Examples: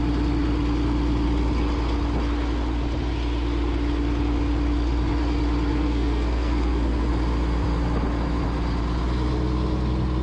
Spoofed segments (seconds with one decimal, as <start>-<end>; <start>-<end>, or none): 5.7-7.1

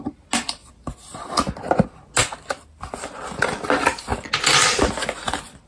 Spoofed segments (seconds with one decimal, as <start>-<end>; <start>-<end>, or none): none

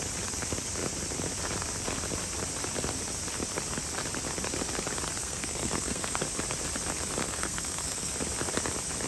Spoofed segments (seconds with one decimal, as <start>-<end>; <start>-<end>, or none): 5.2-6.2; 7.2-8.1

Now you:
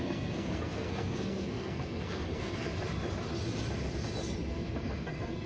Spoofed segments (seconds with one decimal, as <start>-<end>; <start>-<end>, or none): 0.0-2.7; 4.5-5.5

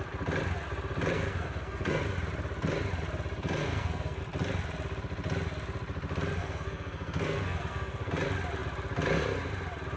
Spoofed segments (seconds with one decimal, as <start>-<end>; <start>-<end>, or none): 1.1-2.0; 3.6-4.2; 6.4-8.1

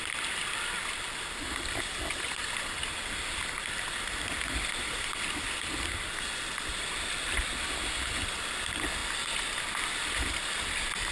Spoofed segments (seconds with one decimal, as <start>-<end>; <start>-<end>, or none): none

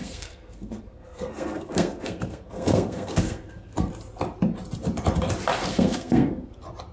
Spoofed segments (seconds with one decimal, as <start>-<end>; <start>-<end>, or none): 0.0-3.9; 5.7-6.5

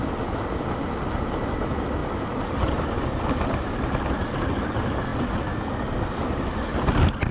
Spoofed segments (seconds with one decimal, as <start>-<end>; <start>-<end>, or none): none